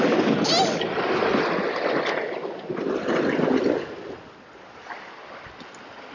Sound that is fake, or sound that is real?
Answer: real